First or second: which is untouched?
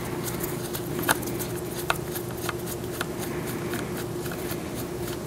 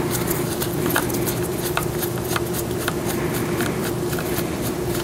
first